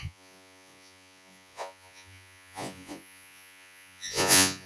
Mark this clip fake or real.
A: fake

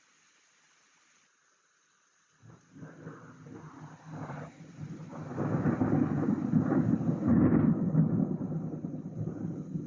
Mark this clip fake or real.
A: real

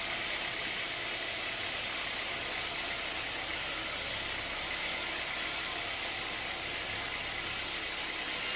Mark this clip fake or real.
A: real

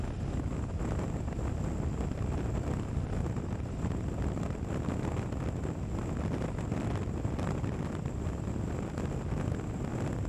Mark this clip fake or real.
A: real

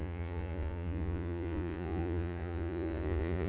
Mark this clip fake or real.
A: fake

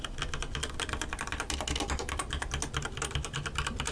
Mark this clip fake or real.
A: real